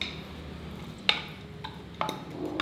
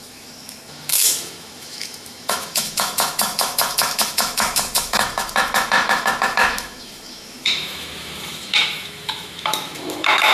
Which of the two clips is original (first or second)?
first